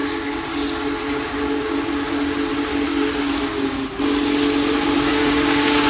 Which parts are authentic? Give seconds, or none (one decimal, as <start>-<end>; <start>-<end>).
0.0-5.1